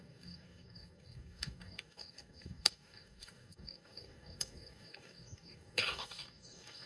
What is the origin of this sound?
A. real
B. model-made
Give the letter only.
B